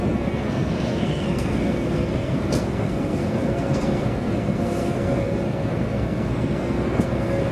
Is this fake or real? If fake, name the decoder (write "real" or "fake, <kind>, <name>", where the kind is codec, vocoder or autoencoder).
fake, codec, SNAC